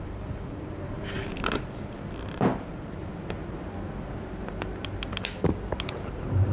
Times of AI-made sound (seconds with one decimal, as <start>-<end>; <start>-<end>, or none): 0.0-1.3; 2.3-3.0; 5.9-6.5